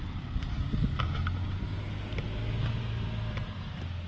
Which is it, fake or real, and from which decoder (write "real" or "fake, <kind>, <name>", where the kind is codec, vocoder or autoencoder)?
real